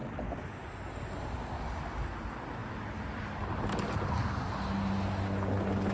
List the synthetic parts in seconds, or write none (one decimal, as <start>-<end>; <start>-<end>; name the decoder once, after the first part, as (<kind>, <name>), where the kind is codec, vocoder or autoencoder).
none